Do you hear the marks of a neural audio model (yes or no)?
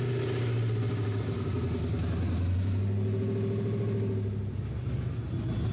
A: no